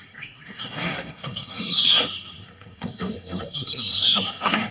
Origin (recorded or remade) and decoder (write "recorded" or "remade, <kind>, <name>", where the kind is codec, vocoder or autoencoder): remade, codec, SNAC